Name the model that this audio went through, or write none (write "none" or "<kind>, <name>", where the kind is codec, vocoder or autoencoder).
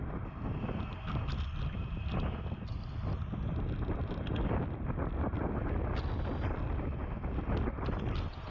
none